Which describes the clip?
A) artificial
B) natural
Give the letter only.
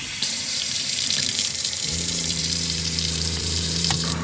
A